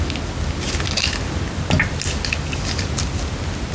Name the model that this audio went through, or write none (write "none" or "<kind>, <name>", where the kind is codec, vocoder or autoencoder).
none